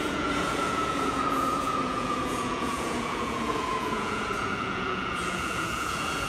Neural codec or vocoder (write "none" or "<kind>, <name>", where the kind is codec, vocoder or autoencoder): vocoder, Vocos